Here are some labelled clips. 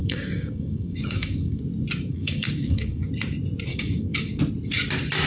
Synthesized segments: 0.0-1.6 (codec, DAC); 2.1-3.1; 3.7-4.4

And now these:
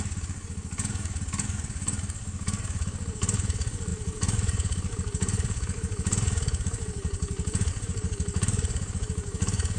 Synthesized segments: 0.0-9.8 (codec, DAC)

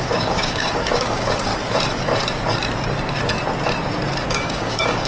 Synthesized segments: 0.0-1.5 (codec, DAC); 4.3-5.1

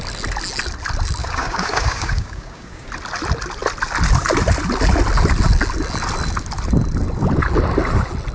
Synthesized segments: 1.2-2.9 (codec, DAC)

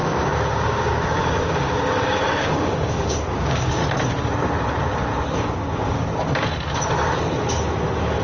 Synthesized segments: 0.0-3.8 (codec, DAC); 5.3-6.1

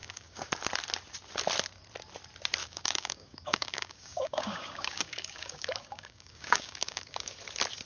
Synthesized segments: 0.0-0.5 (codec, DAC); 2.6-7.3

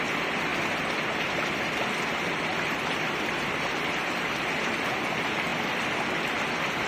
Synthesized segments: none